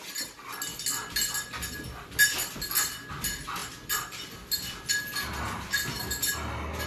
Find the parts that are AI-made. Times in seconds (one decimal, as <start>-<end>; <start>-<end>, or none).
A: none